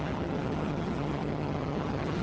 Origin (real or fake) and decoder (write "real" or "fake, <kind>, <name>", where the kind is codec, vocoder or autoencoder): fake, vocoder, HiFi-GAN